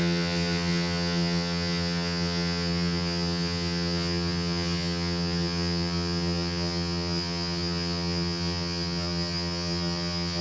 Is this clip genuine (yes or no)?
no